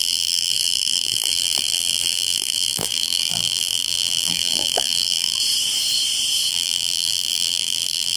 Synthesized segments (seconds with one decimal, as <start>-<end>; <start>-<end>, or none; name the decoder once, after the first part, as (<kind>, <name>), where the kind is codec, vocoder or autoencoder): 0.0-5.4 (vocoder, BigVGAN v2); 6.5-8.2